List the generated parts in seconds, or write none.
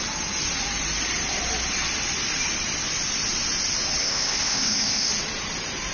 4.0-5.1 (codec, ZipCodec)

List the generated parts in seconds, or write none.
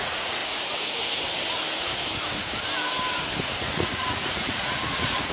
0.0-0.4 (vocoder, Vocos); 3.6-5.3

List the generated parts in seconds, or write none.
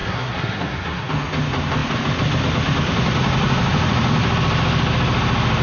0.0-1.1 (codec, SNAC)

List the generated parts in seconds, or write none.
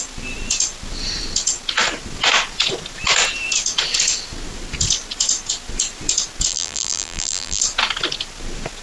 6.5-7.6 (vocoder, BigVGAN v2)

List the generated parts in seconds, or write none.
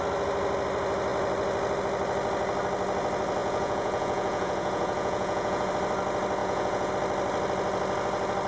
3.4-5.7 (vocoder, Vocos); 6.4-6.9